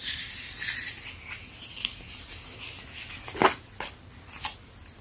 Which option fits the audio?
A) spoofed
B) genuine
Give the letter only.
B